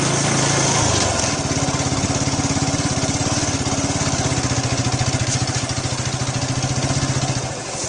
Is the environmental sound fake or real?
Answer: real